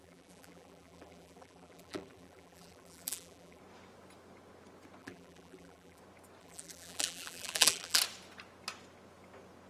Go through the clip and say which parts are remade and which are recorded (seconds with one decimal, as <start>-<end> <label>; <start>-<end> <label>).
0.0-3.6 remade; 3.6-5.0 recorded; 5.0-6.0 remade; 6.0-6.4 recorded; 6.4-8.0 remade; 8.0-9.7 recorded